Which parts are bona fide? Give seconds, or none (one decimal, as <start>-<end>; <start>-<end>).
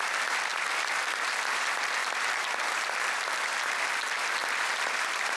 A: 0.0-0.5; 2.7-5.4